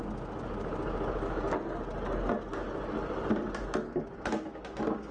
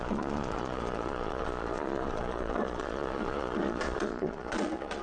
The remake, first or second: second